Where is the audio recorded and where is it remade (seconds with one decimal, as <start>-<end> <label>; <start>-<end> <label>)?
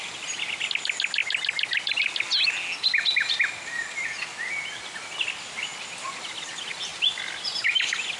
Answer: 0.0-8.2 recorded